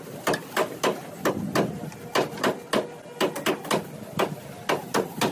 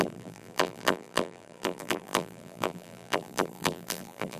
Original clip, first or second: first